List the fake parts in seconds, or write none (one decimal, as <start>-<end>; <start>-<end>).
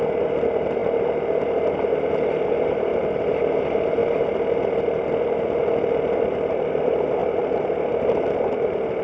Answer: none